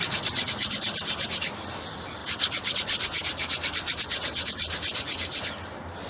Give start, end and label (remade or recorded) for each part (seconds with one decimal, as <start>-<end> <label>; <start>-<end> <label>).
0.0-6.1 recorded